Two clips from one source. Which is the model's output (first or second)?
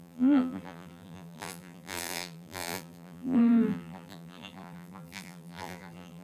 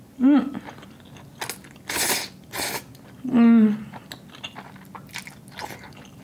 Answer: first